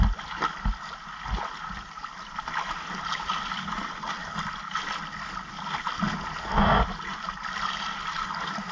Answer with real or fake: real